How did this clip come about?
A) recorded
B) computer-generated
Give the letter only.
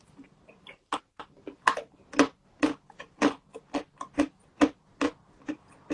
A